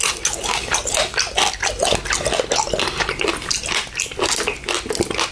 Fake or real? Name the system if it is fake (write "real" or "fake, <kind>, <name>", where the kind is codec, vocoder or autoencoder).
real